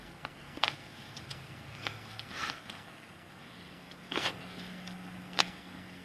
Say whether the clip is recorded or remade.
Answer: remade